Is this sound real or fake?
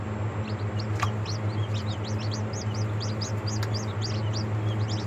real